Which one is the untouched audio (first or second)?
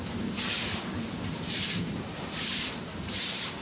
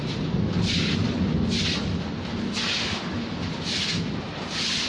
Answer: second